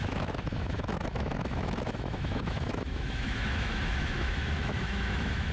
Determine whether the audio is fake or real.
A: fake